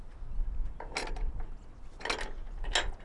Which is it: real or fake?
real